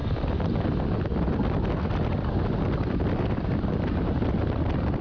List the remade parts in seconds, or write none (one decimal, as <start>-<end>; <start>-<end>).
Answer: none